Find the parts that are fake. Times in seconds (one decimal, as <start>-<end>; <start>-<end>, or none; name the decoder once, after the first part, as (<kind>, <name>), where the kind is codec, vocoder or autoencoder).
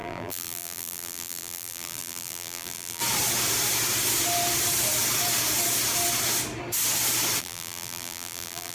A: 0.0-3.0 (vocoder, BigVGAN v2); 7.4-8.7